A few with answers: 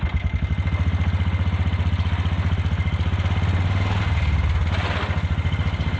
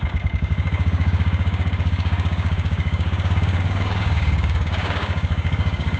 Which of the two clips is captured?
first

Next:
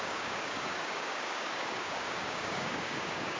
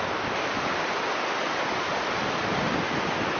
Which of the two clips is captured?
second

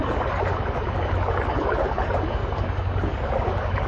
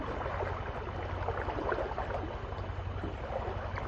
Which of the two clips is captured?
second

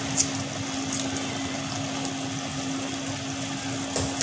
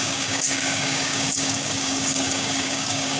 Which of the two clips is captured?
first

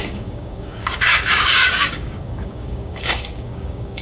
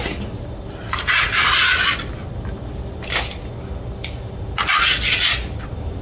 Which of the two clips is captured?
second